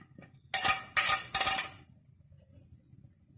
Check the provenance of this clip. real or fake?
real